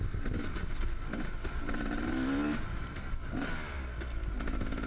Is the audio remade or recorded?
recorded